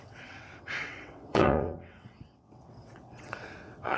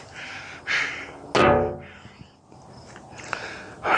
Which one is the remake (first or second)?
first